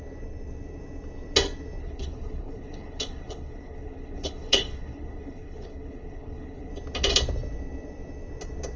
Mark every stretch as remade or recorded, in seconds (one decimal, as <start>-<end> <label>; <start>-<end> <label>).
0.0-1.8 recorded; 1.8-6.7 remade; 6.7-8.8 recorded